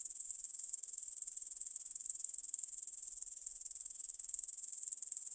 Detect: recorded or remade remade